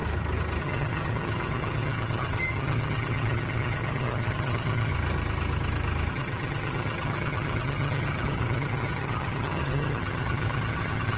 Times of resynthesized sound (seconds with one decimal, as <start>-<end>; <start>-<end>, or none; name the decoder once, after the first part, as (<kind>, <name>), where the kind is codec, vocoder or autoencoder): 0.6-4.9 (vocoder, HiFi-GAN); 6.1-11.2